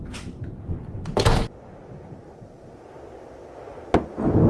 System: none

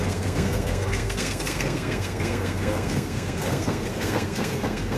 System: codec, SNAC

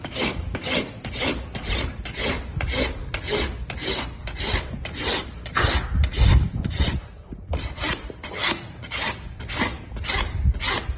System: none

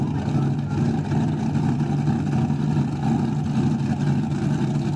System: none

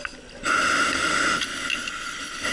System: none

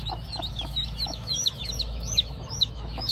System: autoencoder, DAC-VAE